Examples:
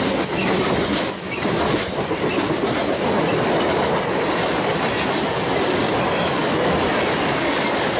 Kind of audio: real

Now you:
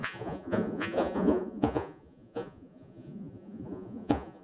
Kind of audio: fake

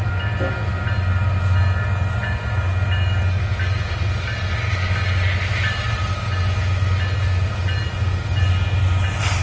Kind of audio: real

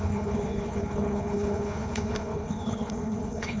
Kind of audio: fake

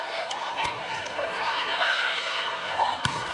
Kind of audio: fake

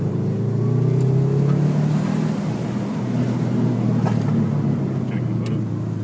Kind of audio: real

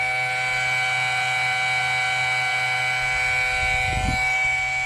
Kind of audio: real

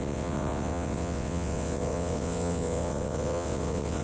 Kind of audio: fake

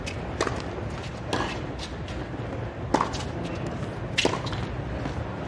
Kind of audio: real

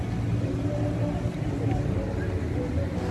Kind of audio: real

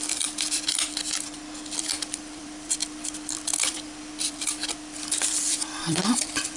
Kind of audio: fake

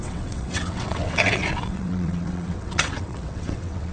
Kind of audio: fake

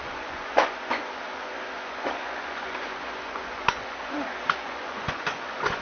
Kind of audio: fake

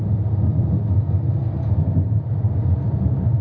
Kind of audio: real